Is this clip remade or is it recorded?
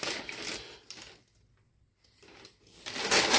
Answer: recorded